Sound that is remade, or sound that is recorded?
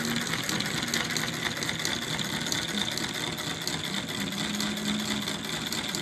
recorded